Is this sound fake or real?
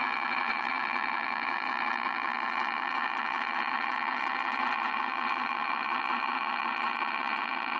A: fake